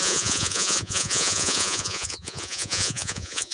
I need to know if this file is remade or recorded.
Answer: remade